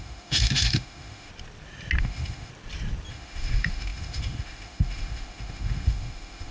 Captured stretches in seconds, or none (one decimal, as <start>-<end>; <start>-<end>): 1.3-2.0; 2.5-3.1